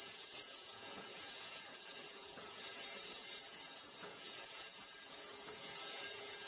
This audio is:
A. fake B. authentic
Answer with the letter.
A